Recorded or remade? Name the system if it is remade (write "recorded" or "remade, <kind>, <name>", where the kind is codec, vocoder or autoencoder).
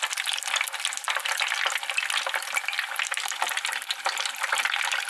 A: recorded